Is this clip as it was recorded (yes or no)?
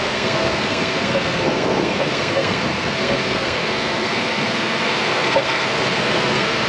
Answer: no